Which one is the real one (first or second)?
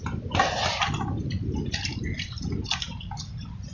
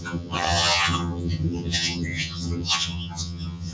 first